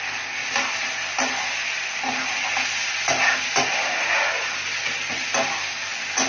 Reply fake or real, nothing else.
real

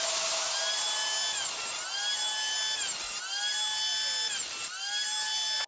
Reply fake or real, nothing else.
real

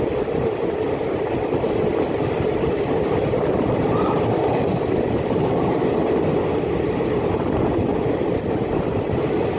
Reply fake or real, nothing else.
real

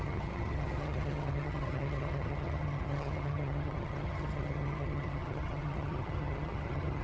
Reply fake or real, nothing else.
fake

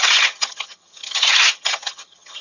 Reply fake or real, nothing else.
fake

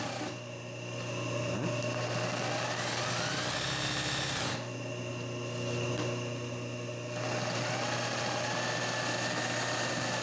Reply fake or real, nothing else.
real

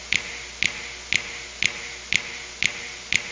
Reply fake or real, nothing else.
real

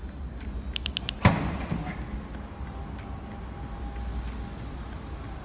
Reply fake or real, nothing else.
real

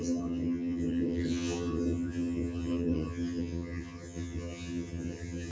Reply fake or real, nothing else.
fake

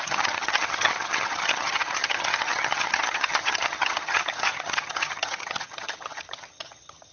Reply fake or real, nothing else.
fake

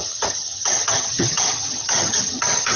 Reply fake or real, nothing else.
fake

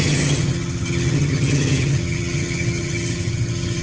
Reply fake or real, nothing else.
fake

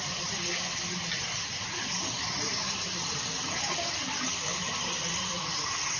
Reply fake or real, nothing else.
real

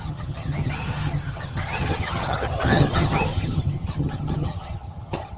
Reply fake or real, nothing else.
fake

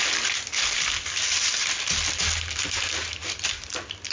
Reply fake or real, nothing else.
real